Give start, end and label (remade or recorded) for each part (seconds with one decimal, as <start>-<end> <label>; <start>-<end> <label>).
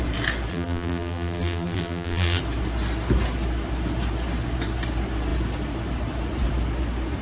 0.0-0.5 recorded; 0.5-2.4 remade; 2.4-7.2 recorded